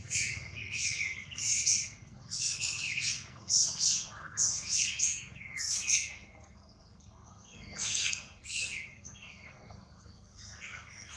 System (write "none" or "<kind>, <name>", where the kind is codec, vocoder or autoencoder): codec, SNAC